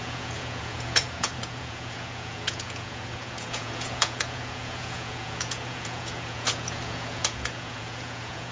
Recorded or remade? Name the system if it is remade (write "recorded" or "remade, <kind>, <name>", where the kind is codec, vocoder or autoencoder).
remade, vocoder, Vocos